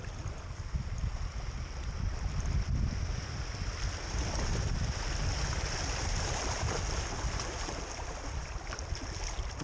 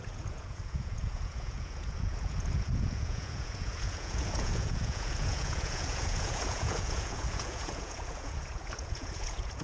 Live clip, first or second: first